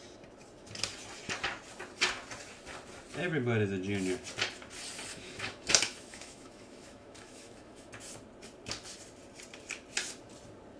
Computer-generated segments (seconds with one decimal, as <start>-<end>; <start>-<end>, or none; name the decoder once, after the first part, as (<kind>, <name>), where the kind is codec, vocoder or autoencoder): 5.1-7.9 (autoencoder, DAC-VAE)